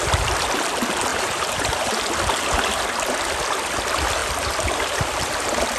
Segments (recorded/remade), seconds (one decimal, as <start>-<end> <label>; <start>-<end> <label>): 0.0-1.1 recorded; 1.1-2.0 remade; 2.0-5.8 recorded